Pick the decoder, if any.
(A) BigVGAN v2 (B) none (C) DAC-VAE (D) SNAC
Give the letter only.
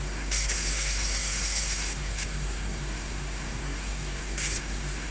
D